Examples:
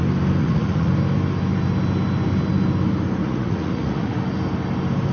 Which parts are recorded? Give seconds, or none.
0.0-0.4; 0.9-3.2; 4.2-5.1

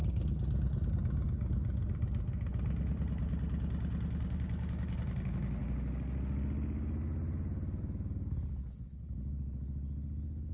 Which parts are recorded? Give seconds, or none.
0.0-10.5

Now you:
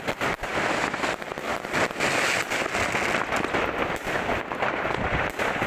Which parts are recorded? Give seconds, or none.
0.0-5.7

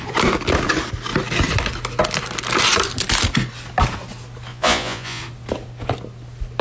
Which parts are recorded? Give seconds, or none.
0.0-4.5; 5.2-6.6

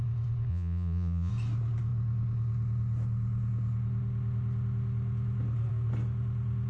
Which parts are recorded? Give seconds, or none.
0.0-0.5; 1.3-6.7

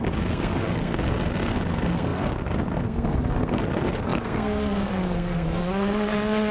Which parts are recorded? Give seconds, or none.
none

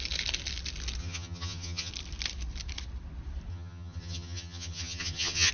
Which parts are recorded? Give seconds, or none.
0.0-1.0; 1.9-3.5